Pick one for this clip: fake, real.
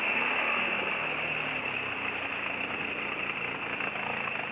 real